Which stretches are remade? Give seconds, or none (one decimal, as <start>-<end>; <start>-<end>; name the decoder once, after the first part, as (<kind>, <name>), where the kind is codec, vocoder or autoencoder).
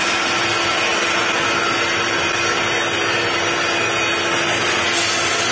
none